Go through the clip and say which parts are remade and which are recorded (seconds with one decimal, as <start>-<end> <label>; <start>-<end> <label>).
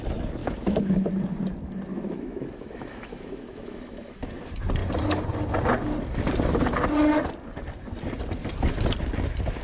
0.0-0.4 recorded; 0.4-1.1 remade; 1.1-1.9 recorded; 1.9-4.2 remade; 4.2-9.6 recorded